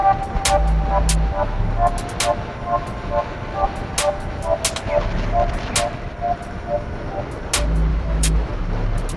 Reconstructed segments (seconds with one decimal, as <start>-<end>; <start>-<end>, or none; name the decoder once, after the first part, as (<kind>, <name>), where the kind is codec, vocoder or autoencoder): 7.9-8.5 (autoencoder, DAC-VAE)